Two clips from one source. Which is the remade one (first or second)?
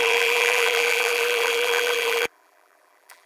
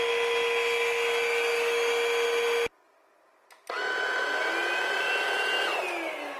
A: first